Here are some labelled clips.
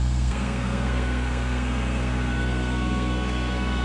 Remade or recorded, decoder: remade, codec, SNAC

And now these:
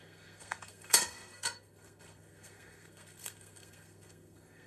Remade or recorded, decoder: remade, codec, SNAC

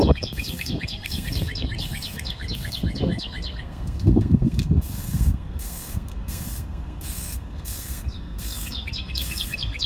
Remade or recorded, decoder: remade, codec, SNAC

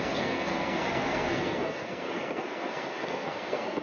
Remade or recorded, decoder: remade, codec, SNAC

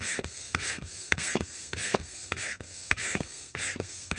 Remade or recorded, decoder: remade, codec, SNAC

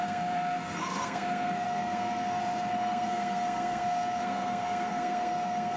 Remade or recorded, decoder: remade, codec, SNAC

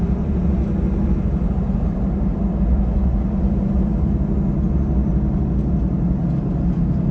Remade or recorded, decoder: recorded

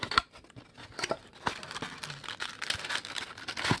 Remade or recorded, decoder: recorded